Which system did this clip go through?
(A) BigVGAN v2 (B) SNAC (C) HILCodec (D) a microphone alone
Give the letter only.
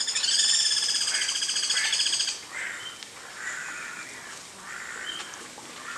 D